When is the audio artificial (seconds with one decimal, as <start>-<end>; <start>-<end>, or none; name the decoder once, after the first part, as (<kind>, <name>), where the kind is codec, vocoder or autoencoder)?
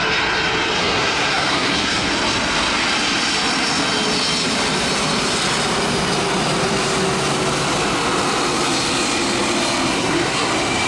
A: 0.8-2.1 (codec, SNAC); 9.9-10.5